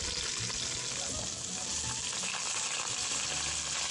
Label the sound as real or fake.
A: real